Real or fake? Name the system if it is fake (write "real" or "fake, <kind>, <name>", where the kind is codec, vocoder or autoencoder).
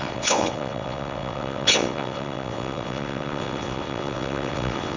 fake, vocoder, WaveNeXt